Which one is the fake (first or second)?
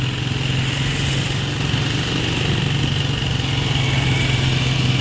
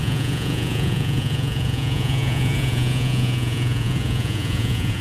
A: second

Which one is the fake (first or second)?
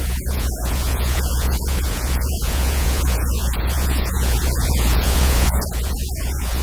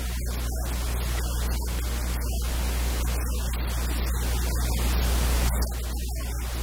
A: first